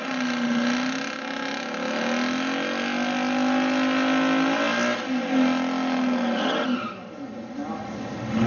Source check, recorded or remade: recorded